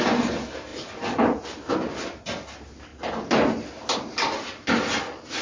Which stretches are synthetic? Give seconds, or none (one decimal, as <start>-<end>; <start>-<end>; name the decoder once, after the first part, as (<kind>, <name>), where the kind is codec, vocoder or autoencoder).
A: none